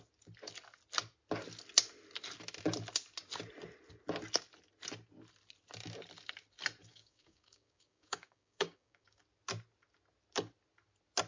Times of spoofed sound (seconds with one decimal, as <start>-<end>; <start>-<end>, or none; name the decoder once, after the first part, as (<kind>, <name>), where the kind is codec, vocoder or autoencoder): 6.9-9.2 (codec, DAC)